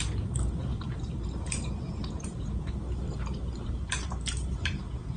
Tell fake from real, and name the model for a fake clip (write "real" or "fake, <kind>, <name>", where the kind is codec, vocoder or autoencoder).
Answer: fake, vocoder, BigVGAN v2